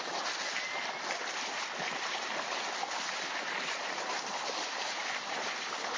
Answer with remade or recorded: recorded